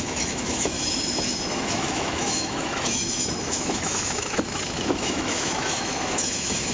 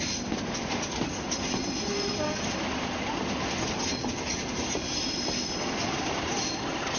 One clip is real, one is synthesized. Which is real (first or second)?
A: second